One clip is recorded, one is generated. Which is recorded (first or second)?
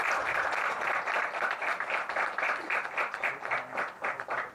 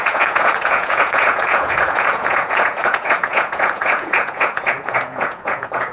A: first